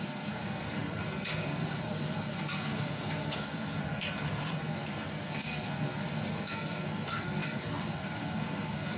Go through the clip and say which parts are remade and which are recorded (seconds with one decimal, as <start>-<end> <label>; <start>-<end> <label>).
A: 0.0-9.0 remade